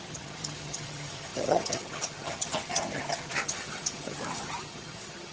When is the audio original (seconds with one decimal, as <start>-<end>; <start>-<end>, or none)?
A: none